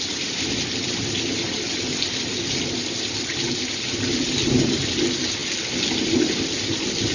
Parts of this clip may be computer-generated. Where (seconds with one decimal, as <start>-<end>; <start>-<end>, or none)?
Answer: none